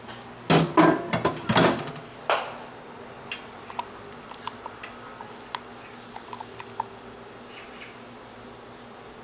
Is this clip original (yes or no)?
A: yes